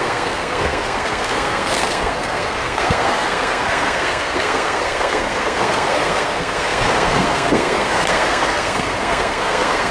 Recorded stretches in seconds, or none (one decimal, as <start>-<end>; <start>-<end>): none